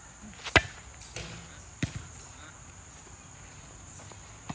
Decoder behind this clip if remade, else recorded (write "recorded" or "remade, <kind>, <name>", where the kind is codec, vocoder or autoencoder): recorded